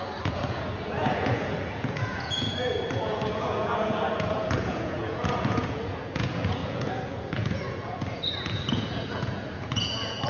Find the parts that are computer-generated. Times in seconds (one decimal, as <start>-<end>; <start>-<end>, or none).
0.0-10.3